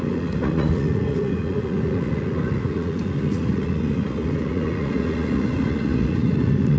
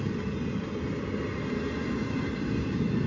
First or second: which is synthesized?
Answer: first